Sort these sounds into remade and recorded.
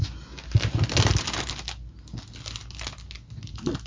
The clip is recorded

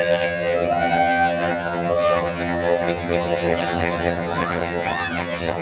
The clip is remade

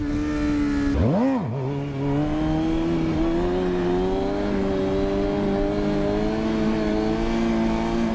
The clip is recorded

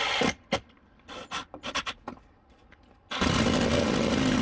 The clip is recorded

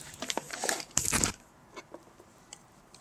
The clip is remade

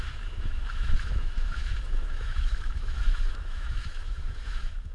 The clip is remade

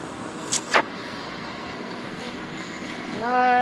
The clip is remade